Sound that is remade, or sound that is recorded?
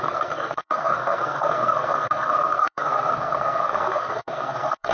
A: remade